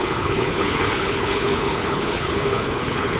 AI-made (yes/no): yes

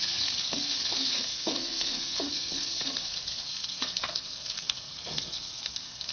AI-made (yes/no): yes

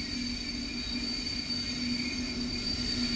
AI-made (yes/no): no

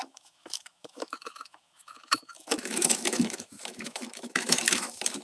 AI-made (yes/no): yes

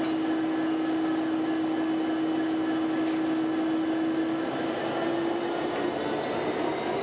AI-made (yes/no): no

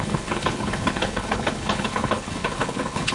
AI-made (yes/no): yes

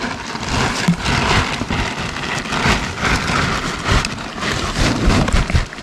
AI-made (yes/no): no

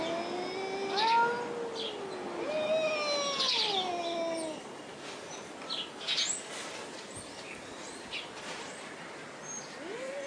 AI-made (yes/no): no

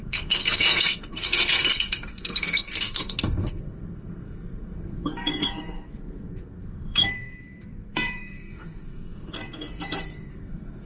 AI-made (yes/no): yes